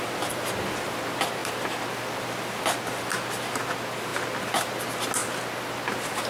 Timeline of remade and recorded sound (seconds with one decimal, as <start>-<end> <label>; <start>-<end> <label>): 0.0-6.3 recorded